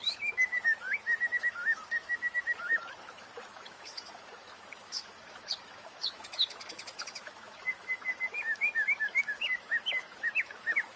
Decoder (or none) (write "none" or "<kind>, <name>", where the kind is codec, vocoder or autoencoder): autoencoder, DAC-VAE